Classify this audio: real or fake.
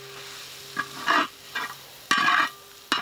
real